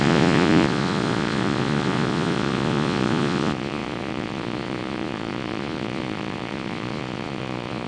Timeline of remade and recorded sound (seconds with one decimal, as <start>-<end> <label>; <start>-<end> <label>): 0.0-7.9 remade